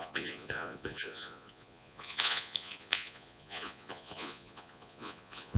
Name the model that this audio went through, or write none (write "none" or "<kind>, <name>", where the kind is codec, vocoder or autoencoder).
vocoder, Vocos